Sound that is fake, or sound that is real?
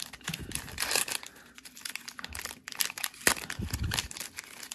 real